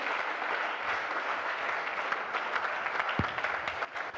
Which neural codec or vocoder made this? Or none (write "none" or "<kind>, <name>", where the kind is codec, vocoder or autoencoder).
none